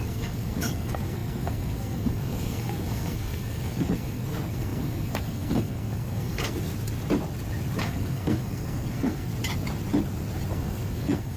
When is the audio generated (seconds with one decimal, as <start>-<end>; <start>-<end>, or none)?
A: 0.0-6.7; 7.8-9.3; 10.5-11.4